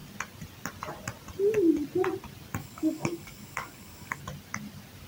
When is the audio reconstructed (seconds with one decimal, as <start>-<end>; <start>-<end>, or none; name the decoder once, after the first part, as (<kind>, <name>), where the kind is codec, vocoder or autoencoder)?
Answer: 2.6-4.2 (codec, DAC)